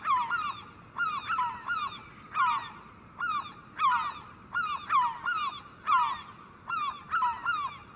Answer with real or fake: real